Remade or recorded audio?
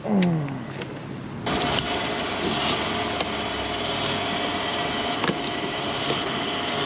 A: recorded